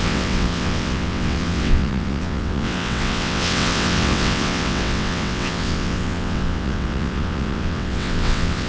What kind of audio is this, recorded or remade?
remade